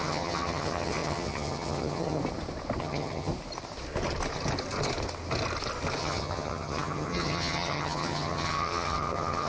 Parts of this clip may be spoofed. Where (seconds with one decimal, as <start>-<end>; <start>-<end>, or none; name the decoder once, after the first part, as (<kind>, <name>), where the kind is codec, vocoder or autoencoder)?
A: 0.0-2.2 (vocoder, HiFi-GAN); 2.8-3.3; 6.0-9.5